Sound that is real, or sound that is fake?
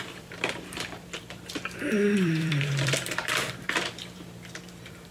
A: fake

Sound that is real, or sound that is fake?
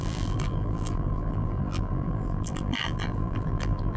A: fake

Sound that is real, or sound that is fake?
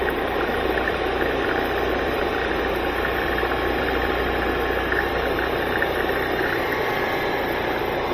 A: fake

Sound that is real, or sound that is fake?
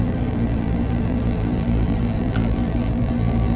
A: fake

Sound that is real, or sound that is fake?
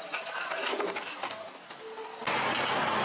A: real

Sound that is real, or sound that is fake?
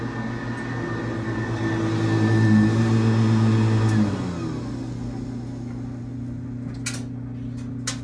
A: real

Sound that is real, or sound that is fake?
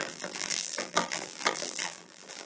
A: fake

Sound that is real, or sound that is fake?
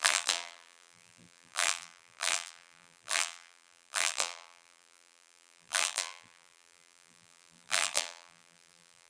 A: fake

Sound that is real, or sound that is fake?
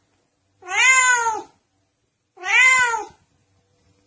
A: real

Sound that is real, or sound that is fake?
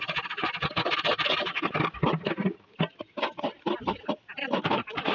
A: real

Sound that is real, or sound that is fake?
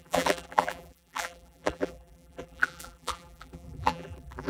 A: fake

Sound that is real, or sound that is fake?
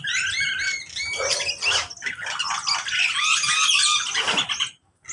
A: real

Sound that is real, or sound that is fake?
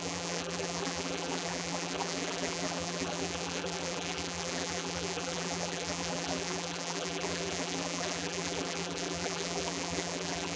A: fake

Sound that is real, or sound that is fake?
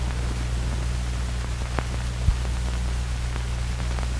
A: real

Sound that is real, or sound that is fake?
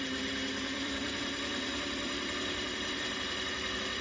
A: fake